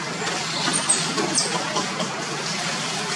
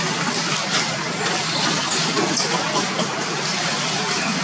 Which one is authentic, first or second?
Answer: first